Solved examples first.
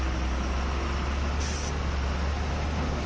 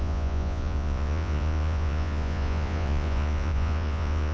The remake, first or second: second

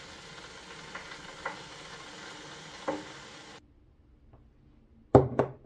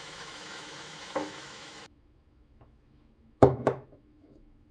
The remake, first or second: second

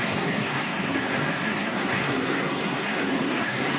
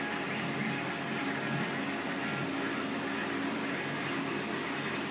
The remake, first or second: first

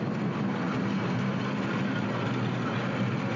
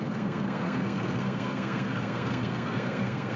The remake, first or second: second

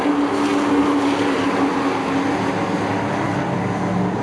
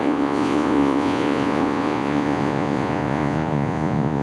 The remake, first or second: second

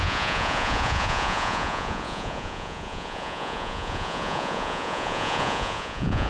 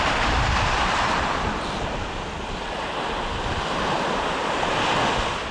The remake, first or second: first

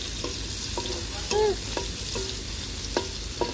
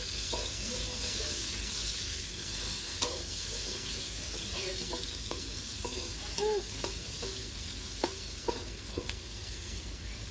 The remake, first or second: second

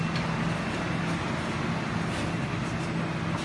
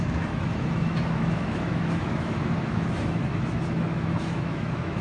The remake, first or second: second